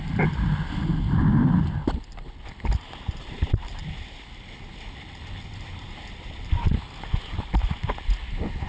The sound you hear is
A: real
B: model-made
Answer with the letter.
A